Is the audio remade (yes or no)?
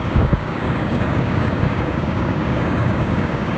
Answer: yes